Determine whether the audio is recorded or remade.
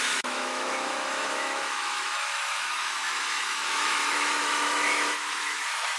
remade